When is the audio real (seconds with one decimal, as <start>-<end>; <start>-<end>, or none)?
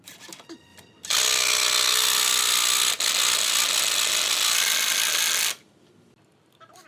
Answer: 0.0-0.7; 1.2-6.9